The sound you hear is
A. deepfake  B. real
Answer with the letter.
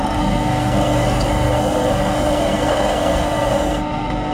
A